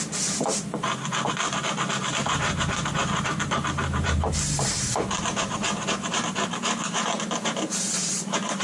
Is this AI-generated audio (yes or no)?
yes